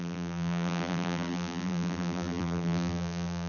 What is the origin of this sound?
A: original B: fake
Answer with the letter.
B